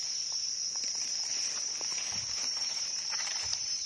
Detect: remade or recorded recorded